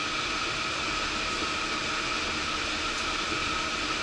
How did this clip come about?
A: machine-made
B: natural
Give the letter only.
B